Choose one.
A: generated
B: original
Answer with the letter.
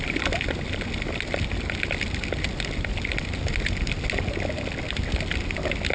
B